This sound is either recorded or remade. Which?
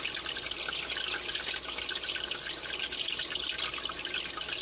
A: recorded